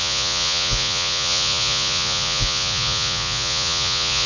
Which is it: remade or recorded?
remade